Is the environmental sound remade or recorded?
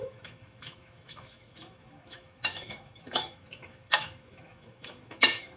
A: remade